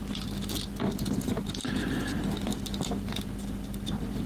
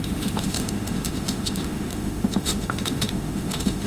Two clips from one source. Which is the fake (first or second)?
second